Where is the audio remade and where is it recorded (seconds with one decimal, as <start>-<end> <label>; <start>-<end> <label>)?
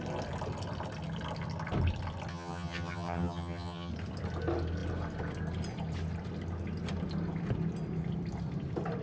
0.0-2.3 recorded; 2.3-3.9 remade; 3.9-9.0 recorded